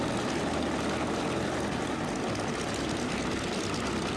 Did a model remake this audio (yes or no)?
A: no